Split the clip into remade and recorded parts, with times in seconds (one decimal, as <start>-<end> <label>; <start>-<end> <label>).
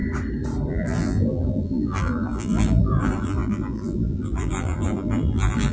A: 0.0-0.7 recorded; 0.7-5.7 remade